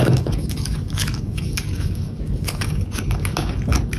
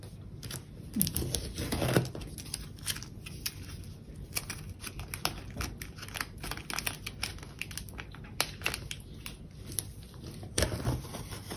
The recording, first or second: second